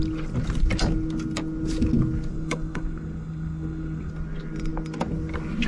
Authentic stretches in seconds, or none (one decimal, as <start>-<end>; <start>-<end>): 0.0-2.3; 4.1-5.7